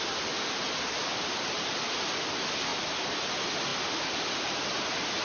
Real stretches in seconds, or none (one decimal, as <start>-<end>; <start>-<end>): 0.0-5.2